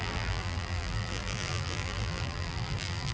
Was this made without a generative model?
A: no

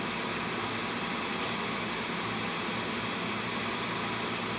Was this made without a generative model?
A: yes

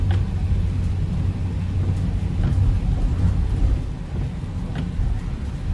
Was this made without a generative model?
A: yes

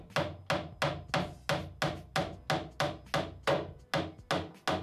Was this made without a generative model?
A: yes